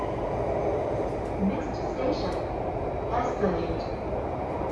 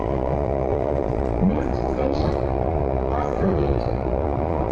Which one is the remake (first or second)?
second